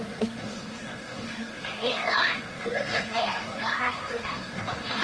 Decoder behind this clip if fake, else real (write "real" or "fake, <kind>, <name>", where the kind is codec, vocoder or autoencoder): fake, codec, SNAC